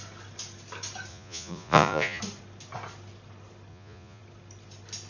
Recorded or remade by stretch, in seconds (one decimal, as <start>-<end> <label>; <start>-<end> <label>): 0.0-1.1 recorded; 1.1-2.2 remade; 2.2-3.7 recorded; 3.7-4.2 remade; 4.2-5.1 recorded

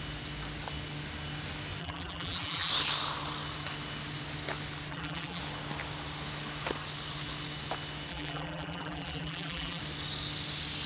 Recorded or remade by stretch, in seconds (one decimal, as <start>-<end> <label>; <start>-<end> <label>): 0.0-1.8 recorded; 1.8-2.7 remade; 2.7-4.9 recorded; 4.9-5.4 remade; 5.4-8.1 recorded; 8.1-9.8 remade; 9.8-10.9 recorded

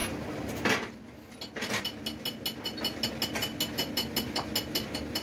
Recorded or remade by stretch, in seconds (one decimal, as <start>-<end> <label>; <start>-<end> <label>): 0.0-5.2 recorded